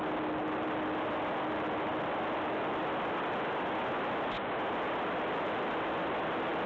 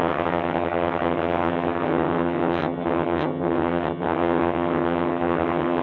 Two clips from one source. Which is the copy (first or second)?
second